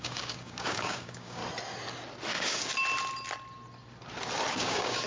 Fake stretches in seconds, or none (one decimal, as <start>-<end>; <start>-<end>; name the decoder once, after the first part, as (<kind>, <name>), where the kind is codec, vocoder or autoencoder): 0.0-1.4 (codec, DAC); 2.3-2.7; 4.5-5.1